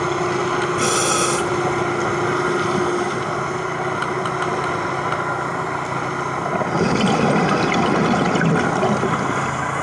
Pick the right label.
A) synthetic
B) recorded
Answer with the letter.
B